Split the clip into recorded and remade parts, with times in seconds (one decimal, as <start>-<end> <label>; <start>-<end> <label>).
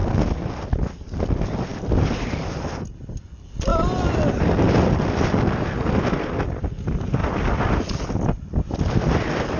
0.0-1.7 recorded; 1.7-2.4 remade; 2.4-3.7 recorded; 3.7-5.1 remade; 5.1-7.2 recorded; 7.2-8.7 remade; 8.7-9.6 recorded